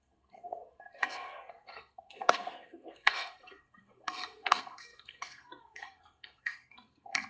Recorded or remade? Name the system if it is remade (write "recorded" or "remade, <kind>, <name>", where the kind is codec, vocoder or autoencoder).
remade, codec, SNAC